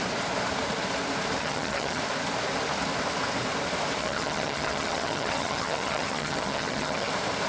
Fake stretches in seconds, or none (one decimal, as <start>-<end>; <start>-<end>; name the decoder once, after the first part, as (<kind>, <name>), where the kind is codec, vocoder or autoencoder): 1.4-2.0 (vocoder, HiFi-GAN); 4.0-7.1